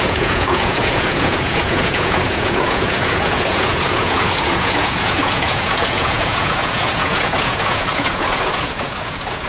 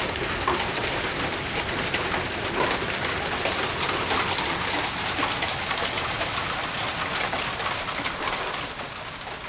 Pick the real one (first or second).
second